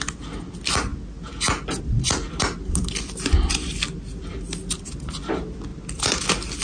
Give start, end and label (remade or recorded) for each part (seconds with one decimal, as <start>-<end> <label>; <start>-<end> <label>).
0.0-6.6 recorded